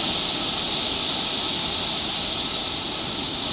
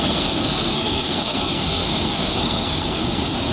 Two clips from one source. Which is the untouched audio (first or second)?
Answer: first